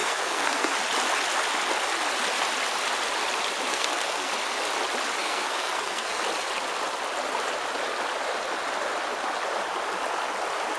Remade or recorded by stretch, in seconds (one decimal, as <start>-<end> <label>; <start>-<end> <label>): 0.0-0.7 remade; 0.7-3.7 recorded; 3.7-4.3 remade; 4.3-5.2 recorded; 5.2-6.2 remade; 6.2-10.8 recorded